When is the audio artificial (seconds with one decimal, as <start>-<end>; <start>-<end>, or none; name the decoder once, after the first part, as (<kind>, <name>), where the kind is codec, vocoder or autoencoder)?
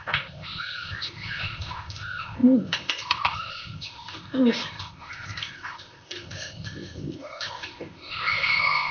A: 0.0-8.9 (codec, ZipCodec)